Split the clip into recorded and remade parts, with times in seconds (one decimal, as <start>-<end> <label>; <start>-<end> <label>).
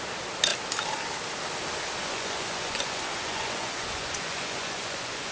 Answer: 0.0-2.0 recorded; 2.0-5.3 remade